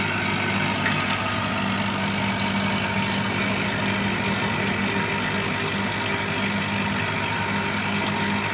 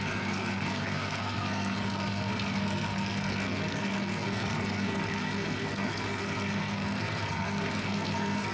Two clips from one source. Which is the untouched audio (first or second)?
first